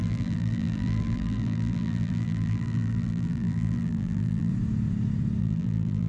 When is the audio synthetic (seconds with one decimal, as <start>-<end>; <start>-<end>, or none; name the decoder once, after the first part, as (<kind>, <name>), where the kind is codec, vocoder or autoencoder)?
0.0-4.5 (vocoder, BigVGAN v2); 5.4-6.1